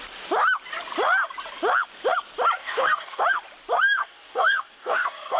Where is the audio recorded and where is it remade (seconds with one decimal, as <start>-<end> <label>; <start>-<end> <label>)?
0.0-2.6 recorded; 2.6-3.2 remade; 3.2-4.0 recorded; 4.0-5.4 remade